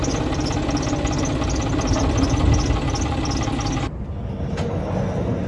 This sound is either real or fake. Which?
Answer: real